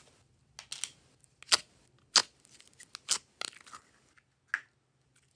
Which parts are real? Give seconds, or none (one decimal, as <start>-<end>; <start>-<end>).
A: 0.0-5.4